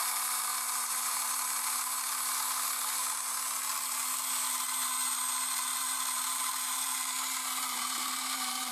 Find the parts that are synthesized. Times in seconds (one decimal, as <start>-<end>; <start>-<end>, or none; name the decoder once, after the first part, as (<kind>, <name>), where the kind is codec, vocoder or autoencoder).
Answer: 0.5-1.3 (vocoder, BigVGAN v2); 5.7-8.7